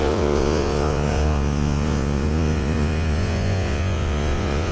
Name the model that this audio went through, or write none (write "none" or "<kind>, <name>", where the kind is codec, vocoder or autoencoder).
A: vocoder, Vocos